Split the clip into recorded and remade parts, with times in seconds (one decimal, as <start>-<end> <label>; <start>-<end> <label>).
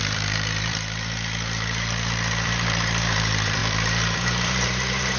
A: 0.0-5.2 remade